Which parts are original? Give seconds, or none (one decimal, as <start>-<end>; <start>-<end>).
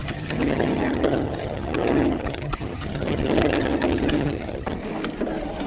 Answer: 4.8-5.7